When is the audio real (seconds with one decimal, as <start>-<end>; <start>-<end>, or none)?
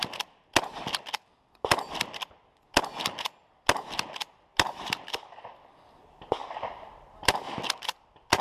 0.0-4.5; 5.1-6.4; 7.4-8.4